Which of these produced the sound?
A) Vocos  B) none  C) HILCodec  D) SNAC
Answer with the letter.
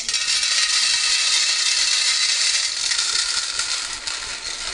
B